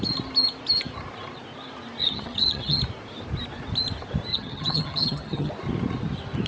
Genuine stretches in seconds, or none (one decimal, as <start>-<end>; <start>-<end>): 0.0-2.0; 2.8-4.3; 5.5-6.5